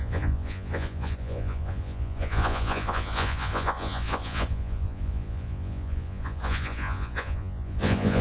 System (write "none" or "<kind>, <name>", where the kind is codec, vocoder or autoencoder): vocoder, Vocos